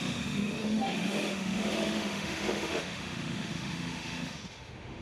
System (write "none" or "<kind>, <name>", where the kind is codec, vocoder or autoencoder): autoencoder, DAC-VAE